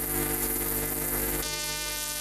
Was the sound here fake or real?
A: fake